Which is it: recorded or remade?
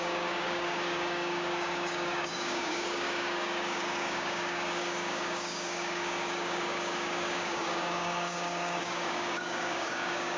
remade